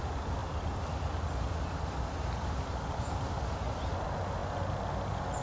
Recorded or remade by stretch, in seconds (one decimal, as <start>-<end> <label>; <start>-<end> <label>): 0.0-0.4 recorded; 0.4-3.6 remade; 3.6-5.4 recorded